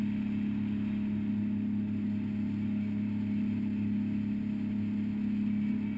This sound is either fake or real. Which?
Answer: real